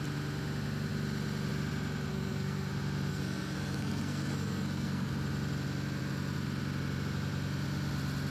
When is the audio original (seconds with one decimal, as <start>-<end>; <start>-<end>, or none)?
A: 0.0-2.1; 2.7-3.1; 5.1-8.3